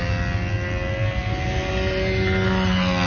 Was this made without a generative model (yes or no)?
yes